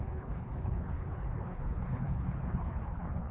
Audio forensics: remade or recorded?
remade